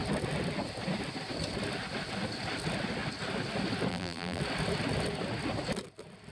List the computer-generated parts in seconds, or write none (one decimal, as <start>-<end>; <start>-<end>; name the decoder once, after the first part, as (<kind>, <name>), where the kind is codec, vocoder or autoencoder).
3.9-4.4 (vocoder, BigVGAN v2)